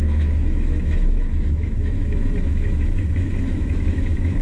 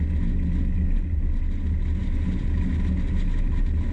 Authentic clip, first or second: second